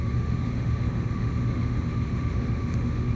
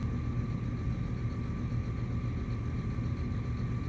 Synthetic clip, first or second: first